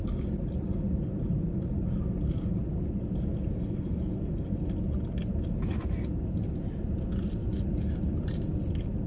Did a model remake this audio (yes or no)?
no